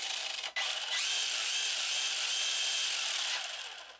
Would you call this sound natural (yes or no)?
yes